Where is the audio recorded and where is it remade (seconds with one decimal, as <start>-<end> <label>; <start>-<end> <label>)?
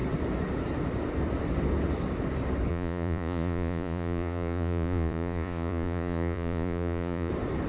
0.0-2.7 recorded; 2.7-7.3 remade; 7.3-7.7 recorded